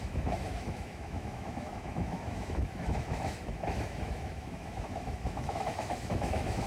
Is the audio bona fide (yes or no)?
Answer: no